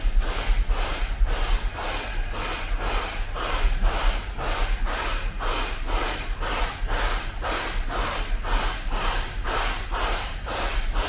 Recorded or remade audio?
recorded